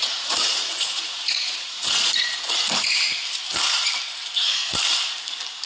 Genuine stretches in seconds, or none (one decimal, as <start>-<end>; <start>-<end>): 2.5-5.7